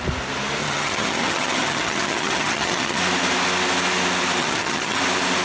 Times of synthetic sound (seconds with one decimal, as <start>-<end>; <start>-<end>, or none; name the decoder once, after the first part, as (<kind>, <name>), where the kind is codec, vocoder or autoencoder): 0.6-3.0 (vocoder, HiFi-GAN); 4.4-5.0